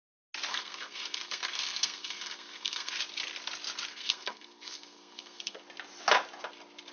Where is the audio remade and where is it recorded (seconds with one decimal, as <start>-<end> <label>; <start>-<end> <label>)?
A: 0.0-0.5 recorded; 0.5-2.9 remade; 2.9-3.9 recorded; 3.9-5.6 remade; 5.6-6.9 recorded